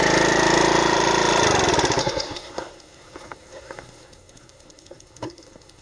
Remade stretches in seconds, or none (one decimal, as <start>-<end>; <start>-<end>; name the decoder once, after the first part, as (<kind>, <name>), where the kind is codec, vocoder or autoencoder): 2.0-5.8 (codec, SNAC)